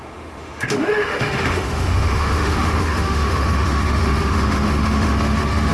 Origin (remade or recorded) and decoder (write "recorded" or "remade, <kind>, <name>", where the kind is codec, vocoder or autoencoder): remade, autoencoder, DAC-VAE